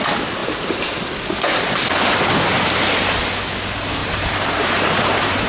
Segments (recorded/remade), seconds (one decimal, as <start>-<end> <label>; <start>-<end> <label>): 0.0-0.4 recorded; 0.4-1.1 remade; 1.1-2.5 recorded; 2.5-3.2 remade; 3.2-4.0 recorded; 4.0-5.5 remade